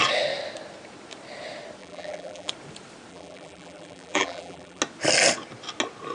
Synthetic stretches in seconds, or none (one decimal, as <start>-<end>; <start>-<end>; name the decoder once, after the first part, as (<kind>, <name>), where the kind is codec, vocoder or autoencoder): 1.8-2.5 (vocoder, BigVGAN v2); 3.1-4.8